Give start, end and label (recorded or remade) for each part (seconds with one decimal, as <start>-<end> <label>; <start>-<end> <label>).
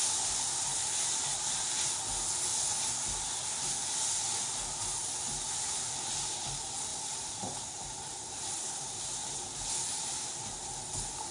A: 0.0-6.9 recorded; 6.9-9.0 remade; 9.0-11.3 recorded